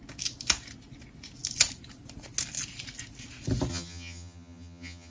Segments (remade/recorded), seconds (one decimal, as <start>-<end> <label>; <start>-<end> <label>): 0.0-3.7 recorded; 3.7-5.1 remade